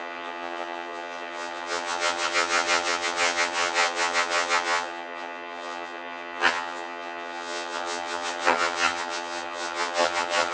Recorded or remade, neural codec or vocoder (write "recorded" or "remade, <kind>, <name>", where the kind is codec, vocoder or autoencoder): remade, vocoder, HiFi-GAN